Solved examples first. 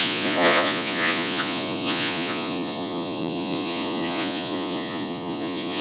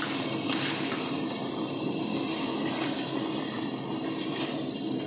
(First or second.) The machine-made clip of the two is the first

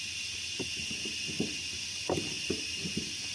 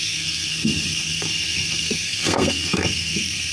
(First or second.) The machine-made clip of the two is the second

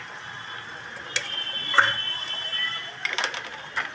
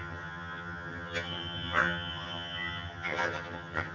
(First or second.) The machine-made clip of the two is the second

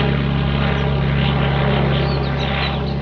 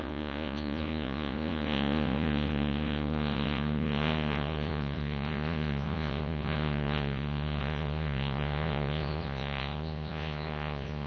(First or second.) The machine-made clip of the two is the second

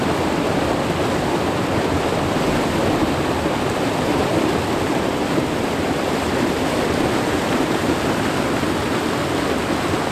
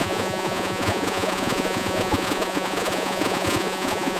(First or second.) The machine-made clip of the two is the second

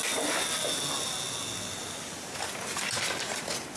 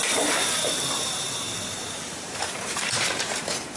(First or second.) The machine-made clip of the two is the second